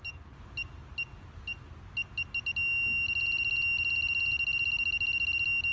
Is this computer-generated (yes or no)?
no